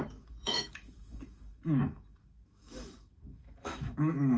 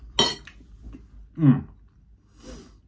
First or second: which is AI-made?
first